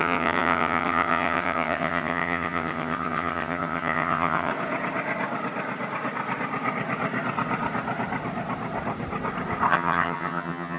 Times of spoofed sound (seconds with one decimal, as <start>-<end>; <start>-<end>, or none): 0.0-4.5; 9.7-10.8